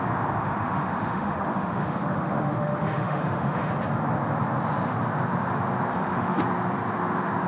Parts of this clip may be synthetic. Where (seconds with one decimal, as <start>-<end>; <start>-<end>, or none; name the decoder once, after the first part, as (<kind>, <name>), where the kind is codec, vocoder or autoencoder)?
0.4-3.7 (autoencoder, DAC-VAE); 5.9-6.4